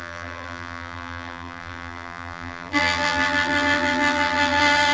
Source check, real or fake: fake